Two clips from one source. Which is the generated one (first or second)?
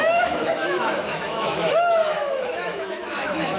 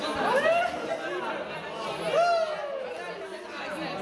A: first